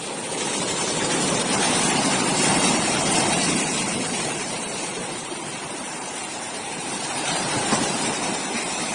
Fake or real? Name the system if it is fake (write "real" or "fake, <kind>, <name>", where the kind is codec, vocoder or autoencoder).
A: fake, vocoder, BigVGAN v2